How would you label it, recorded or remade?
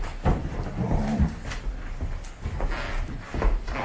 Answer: recorded